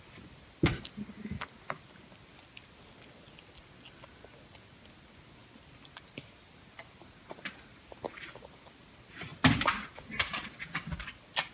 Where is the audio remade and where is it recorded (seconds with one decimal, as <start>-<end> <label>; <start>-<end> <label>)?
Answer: 0.0-11.5 recorded

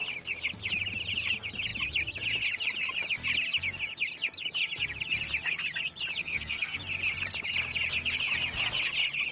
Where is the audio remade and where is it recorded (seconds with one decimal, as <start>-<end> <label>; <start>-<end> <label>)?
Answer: 0.0-6.2 recorded; 6.2-6.8 remade; 6.8-9.3 recorded

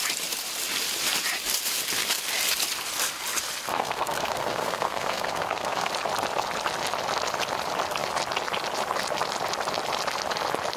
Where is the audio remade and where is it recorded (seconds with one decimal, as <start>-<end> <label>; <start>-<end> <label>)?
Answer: 0.0-3.7 recorded; 3.7-5.9 remade; 5.9-10.8 recorded